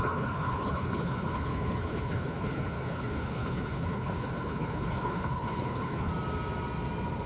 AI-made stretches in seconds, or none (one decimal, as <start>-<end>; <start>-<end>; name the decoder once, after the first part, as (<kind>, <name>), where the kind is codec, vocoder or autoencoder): 0.0-6.1 (codec, HILCodec)